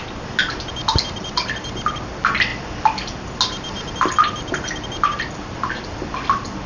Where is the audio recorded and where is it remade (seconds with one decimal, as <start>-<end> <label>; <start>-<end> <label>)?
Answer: 0.0-6.7 recorded